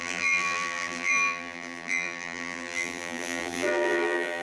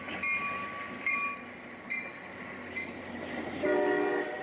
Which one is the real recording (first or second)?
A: second